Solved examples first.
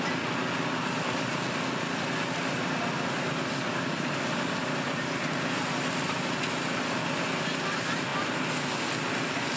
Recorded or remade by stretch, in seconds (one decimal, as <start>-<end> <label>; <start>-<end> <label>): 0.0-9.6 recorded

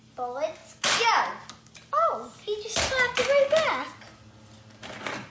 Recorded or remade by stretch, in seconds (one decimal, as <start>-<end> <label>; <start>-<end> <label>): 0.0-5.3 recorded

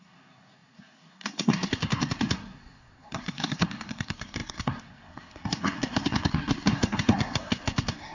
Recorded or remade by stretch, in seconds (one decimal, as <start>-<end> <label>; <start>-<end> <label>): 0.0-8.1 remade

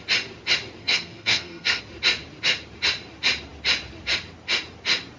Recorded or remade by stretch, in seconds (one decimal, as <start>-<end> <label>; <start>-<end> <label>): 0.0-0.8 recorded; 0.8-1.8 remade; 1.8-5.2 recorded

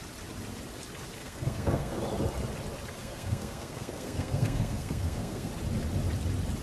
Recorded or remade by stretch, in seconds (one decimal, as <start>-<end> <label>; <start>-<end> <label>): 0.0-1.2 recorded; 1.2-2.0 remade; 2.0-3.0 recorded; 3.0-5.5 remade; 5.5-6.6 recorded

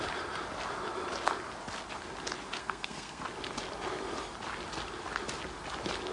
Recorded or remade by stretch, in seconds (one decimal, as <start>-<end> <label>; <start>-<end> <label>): 0.0-2.6 recorded; 2.6-3.2 remade; 3.2-6.1 recorded

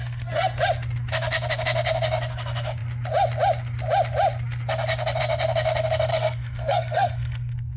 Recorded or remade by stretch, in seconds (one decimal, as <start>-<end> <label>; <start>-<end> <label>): 0.0-0.6 remade; 0.6-6.1 recorded; 6.1-7.8 remade